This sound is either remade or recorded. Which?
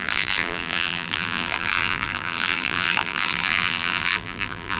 remade